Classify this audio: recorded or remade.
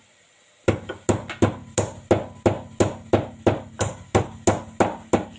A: recorded